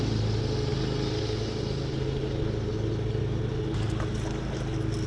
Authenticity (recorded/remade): recorded